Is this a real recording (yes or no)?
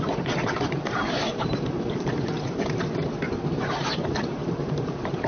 no